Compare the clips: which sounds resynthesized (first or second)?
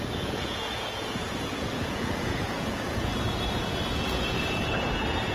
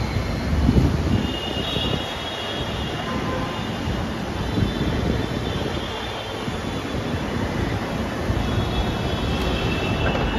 first